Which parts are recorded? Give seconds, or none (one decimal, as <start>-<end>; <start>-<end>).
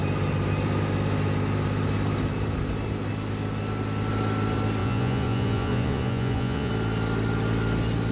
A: 0.0-4.8; 6.7-8.1